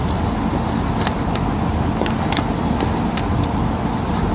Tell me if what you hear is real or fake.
real